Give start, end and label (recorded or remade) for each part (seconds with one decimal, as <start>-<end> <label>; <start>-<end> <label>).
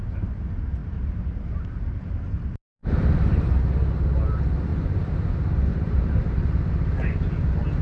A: 0.0-0.8 recorded; 0.8-2.1 remade; 2.1-2.8 recorded; 2.8-3.6 remade; 3.6-4.7 recorded; 4.7-5.3 remade; 5.3-5.7 recorded; 5.7-6.7 remade; 6.7-7.8 recorded